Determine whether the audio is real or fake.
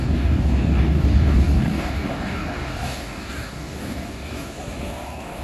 fake